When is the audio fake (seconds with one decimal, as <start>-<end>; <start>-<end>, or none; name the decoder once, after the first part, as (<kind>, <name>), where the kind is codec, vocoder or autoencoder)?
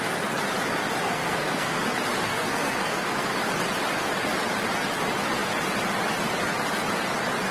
1.0-1.8 (codec, SNAC); 2.3-3.4